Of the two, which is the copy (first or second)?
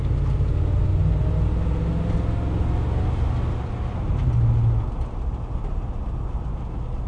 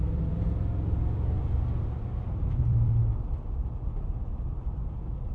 second